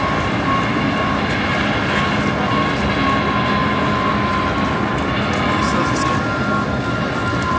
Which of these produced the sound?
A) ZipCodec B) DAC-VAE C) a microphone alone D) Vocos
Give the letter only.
C